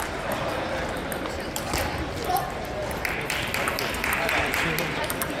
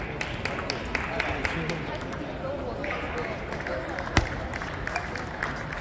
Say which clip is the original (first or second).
second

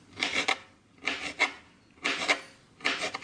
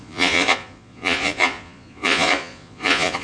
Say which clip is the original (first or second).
first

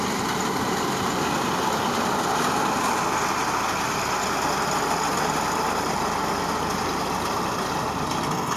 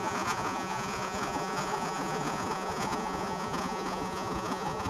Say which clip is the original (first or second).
first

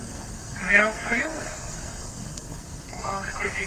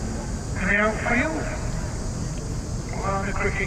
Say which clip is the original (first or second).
second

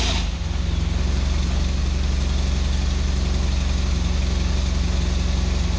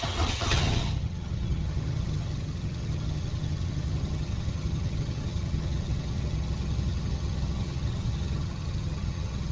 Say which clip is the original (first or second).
first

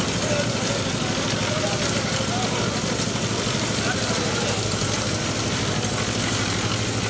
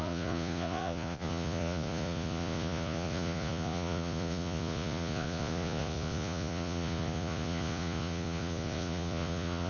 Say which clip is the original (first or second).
first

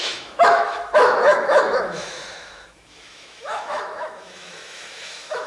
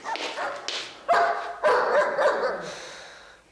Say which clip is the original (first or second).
second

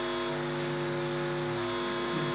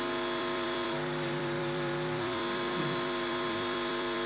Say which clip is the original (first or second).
first